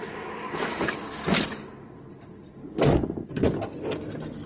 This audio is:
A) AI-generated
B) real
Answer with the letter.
B